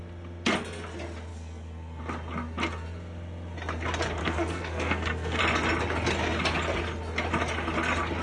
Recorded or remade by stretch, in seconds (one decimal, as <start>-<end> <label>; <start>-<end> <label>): 0.0-1.3 recorded; 1.3-2.0 remade; 2.0-4.2 recorded; 4.2-5.4 remade; 5.4-8.2 recorded